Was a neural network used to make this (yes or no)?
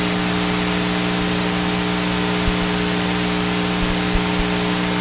no